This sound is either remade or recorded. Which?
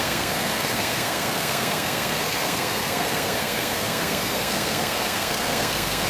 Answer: remade